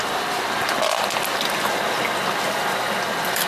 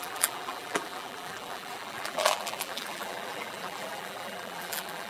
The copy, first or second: second